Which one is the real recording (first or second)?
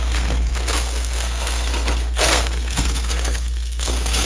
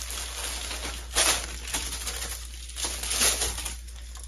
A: second